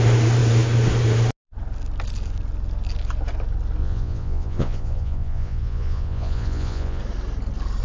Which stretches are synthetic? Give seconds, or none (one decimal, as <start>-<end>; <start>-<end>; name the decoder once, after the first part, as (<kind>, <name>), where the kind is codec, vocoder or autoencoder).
3.8-7.0 (vocoder, Vocos)